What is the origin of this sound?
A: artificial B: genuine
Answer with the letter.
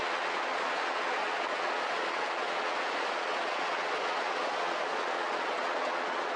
A